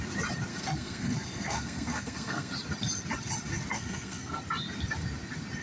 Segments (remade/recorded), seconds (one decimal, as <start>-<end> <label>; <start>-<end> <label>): 0.0-0.5 recorded; 0.5-2.5 remade; 2.5-3.7 recorded; 3.7-4.4 remade; 4.4-5.6 recorded